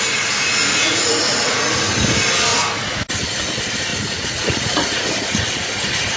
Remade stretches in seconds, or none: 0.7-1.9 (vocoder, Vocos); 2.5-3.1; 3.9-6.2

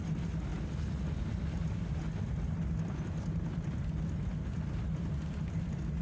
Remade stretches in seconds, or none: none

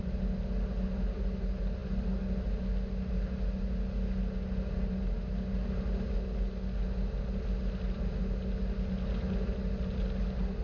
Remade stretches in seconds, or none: none

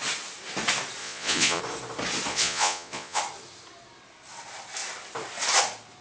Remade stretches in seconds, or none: 1.0-1.6 (vocoder, Vocos); 2.3-3.2

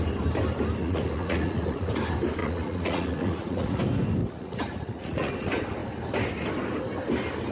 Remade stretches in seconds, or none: 0.8-1.9 (vocoder, Vocos); 2.4-3.8; 4.2-5.3